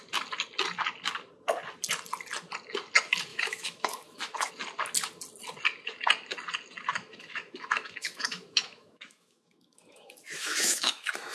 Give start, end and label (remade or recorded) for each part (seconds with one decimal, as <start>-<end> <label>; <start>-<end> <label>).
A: 0.0-3.3 recorded; 3.3-4.5 remade; 4.5-6.9 recorded; 6.9-11.3 remade